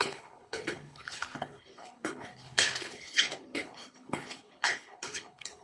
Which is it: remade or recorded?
remade